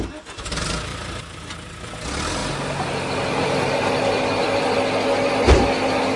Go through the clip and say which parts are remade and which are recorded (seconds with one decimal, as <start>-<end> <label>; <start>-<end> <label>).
0.0-6.2 recorded